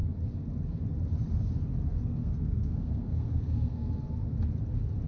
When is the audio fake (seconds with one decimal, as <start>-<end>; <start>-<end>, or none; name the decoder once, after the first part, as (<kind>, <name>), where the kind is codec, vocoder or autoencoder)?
1.9-3.9 (codec, SNAC)